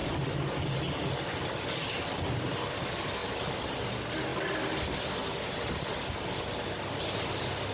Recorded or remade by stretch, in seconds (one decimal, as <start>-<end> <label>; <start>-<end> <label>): 0.0-7.7 recorded